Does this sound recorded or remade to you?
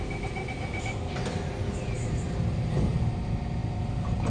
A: recorded